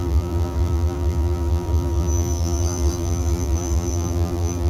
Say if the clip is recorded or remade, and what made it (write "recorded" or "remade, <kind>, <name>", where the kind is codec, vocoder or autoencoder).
remade, vocoder, BigVGAN v2